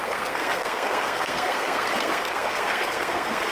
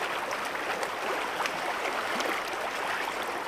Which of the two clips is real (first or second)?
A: second